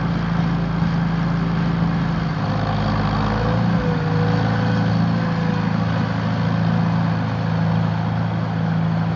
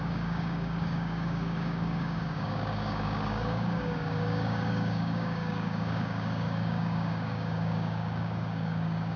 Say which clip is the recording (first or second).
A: first